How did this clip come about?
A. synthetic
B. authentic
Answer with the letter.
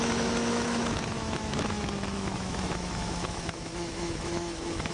A